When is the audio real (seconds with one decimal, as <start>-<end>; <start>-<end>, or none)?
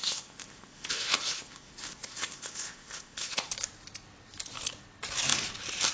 3.5-5.9